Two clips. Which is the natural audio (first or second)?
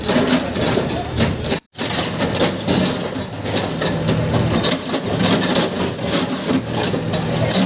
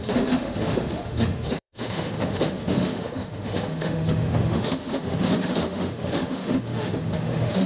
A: first